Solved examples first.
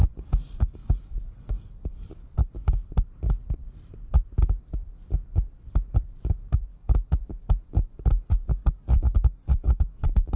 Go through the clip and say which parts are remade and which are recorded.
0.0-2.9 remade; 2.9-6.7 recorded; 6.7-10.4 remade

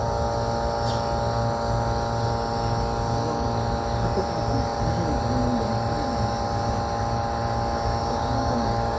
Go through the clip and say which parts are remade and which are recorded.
0.0-8.0 recorded; 8.0-9.0 remade

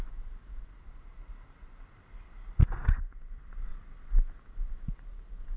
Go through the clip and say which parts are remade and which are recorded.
0.0-2.8 recorded; 2.8-3.7 remade; 3.7-5.6 recorded

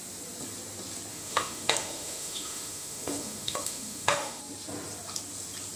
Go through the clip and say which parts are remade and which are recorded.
0.0-1.1 recorded; 1.1-4.4 remade; 4.4-5.8 recorded

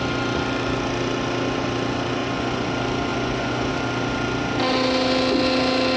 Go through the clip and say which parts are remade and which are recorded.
0.0-2.2 recorded; 2.2-2.7 remade; 2.7-3.1 recorded; 3.1-3.7 remade; 3.7-6.0 recorded

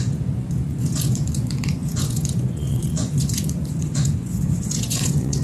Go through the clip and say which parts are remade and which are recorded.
0.0-5.4 remade

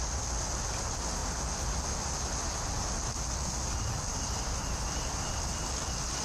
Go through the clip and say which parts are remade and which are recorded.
0.0-4.1 recorded; 4.1-5.4 remade; 5.4-6.2 recorded